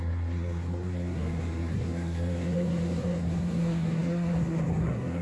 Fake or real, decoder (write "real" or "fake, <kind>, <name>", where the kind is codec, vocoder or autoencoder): fake, codec, SNAC